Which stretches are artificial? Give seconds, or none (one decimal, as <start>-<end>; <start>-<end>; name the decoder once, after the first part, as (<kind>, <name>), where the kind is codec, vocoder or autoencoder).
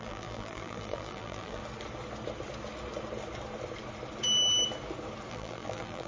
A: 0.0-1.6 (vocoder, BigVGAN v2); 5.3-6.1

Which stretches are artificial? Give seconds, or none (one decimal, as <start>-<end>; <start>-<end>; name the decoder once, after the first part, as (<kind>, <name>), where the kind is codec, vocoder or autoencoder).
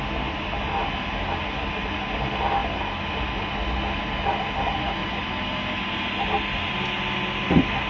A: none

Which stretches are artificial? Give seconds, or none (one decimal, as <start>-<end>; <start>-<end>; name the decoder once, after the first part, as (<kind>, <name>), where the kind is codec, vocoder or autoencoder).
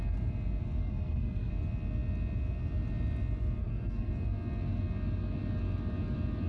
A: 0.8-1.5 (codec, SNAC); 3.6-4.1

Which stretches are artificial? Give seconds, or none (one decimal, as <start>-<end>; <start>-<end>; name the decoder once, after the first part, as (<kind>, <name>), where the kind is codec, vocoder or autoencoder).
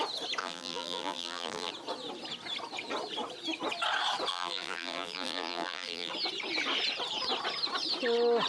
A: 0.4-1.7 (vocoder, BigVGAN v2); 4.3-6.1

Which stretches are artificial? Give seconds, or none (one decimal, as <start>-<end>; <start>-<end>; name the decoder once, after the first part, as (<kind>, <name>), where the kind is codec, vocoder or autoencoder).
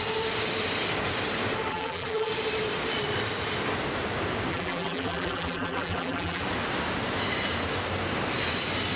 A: 1.7-2.3 (vocoder, BigVGAN v2); 4.5-6.4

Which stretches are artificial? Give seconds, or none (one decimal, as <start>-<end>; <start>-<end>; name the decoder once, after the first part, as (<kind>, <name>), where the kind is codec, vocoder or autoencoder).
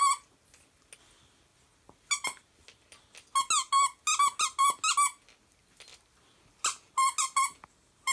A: none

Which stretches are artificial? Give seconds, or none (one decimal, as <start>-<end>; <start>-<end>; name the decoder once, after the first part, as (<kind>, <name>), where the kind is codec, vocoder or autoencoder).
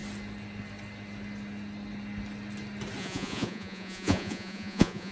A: 3.0-5.1 (vocoder, Vocos)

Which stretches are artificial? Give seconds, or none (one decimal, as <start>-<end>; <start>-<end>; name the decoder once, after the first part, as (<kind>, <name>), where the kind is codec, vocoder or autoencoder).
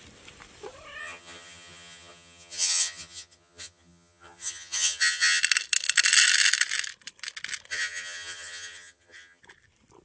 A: 1.0-5.4 (vocoder, HiFi-GAN); 7.7-9.4